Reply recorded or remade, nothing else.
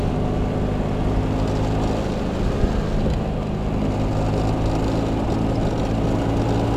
recorded